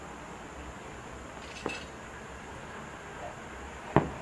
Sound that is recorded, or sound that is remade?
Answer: recorded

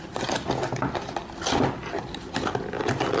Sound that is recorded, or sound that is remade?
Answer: recorded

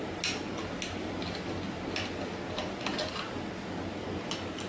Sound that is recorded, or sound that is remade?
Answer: recorded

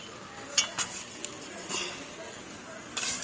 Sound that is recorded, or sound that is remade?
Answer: recorded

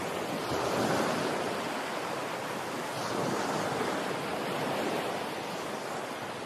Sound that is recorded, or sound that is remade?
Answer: recorded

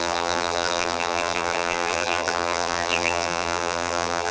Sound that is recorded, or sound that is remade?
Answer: remade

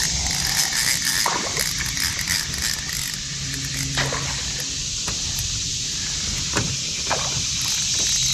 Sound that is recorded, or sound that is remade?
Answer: recorded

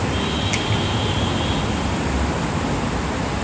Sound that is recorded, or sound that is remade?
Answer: remade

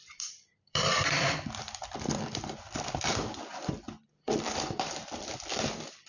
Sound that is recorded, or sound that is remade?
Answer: remade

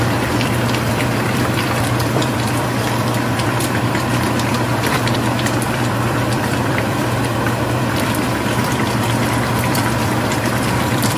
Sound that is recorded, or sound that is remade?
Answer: remade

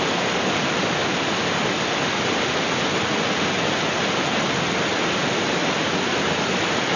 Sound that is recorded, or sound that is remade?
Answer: recorded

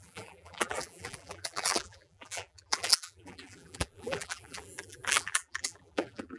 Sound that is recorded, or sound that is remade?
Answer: remade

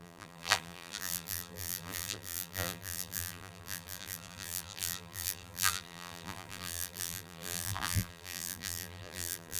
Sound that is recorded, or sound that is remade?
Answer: remade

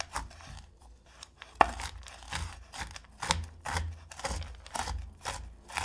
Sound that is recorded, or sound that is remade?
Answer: recorded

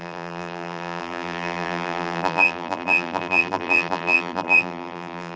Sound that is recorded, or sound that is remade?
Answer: remade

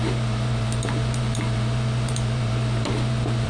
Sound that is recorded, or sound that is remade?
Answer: remade